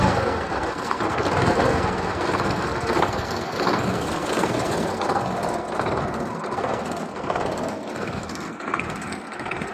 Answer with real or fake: fake